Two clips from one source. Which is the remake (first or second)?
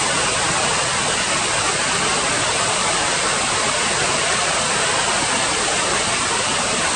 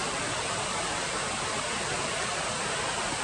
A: first